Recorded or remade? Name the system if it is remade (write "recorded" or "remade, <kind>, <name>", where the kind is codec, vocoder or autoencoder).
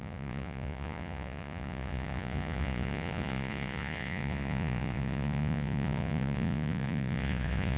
remade, vocoder, Vocos